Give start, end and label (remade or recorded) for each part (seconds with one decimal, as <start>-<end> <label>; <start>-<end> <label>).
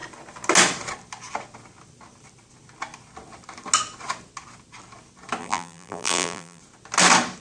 0.0-5.4 recorded; 5.4-6.6 remade; 6.6-7.4 recorded